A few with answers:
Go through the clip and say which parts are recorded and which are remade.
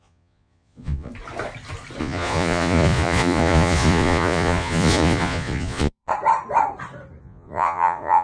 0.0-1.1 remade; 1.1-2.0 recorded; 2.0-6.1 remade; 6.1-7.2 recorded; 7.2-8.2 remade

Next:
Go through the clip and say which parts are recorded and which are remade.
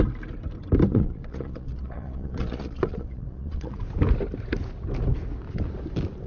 0.0-0.9 recorded; 0.9-3.8 remade; 3.8-6.3 recorded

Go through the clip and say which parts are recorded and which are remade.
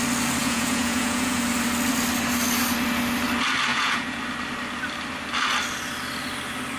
0.0-0.4 recorded; 0.4-1.4 remade; 1.4-3.7 recorded; 3.7-4.2 remade; 4.2-6.8 recorded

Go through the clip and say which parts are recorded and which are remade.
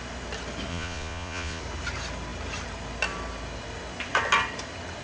0.0-0.7 recorded; 0.7-1.6 remade; 1.6-5.0 recorded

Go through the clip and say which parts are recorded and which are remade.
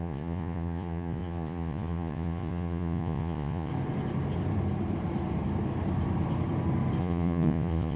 0.0-3.7 remade; 3.7-7.0 recorded; 7.0-8.0 remade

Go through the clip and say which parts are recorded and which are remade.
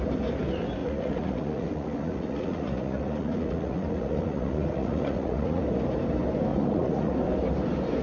0.0-0.8 recorded; 0.8-5.6 remade; 5.6-6.5 recorded; 6.5-7.1 remade; 7.1-8.0 recorded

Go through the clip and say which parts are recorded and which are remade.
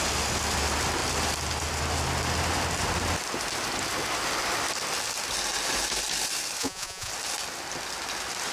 0.0-6.6 recorded; 6.6-7.1 remade; 7.1-8.5 recorded